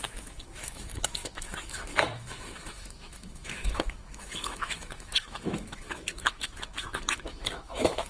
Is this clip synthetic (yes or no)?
yes